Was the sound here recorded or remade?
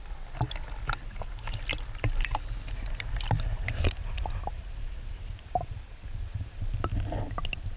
recorded